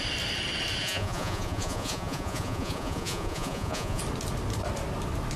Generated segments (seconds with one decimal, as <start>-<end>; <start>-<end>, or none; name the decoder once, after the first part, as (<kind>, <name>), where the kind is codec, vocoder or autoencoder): 0.8-4.0 (vocoder, Vocos)